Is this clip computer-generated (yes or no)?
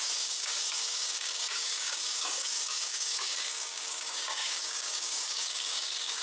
yes